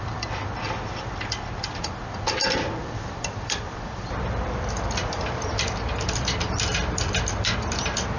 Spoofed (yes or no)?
yes